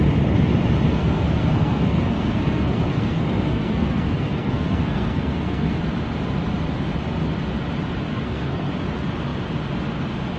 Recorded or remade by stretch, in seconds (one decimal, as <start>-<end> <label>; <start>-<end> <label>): 0.0-0.9 recorded; 0.9-5.8 remade; 5.8-8.1 recorded; 8.1-8.7 remade; 8.7-10.4 recorded